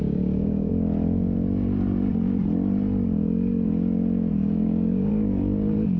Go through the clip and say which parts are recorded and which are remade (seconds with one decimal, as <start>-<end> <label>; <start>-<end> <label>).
0.0-0.7 remade; 0.7-4.3 recorded; 4.3-5.1 remade; 5.1-6.0 recorded